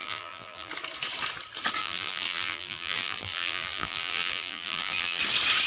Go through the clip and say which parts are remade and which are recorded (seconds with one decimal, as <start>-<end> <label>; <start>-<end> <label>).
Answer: 0.0-0.7 remade; 0.7-1.8 recorded; 1.8-5.2 remade; 5.2-5.7 recorded